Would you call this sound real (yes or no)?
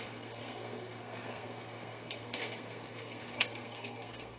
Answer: no